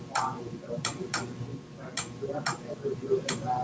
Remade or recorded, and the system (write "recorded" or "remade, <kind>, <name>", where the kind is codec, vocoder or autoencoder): recorded